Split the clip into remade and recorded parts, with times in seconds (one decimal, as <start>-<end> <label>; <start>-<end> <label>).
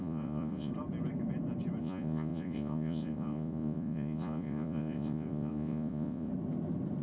0.0-0.7 remade; 0.7-1.8 recorded; 1.8-6.3 remade; 6.3-7.0 recorded